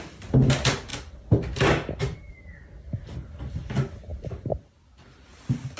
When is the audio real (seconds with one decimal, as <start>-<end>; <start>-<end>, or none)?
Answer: 0.0-5.8